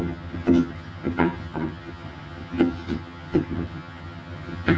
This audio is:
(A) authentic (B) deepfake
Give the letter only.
B